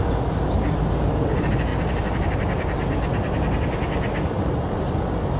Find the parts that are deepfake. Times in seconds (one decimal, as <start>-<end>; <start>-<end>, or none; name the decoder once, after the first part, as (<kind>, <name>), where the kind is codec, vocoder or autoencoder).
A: none